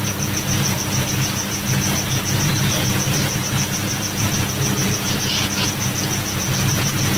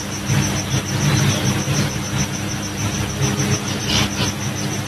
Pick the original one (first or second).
second